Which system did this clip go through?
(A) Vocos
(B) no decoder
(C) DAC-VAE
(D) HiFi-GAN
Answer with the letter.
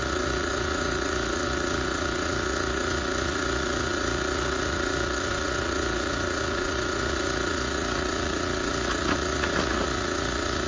A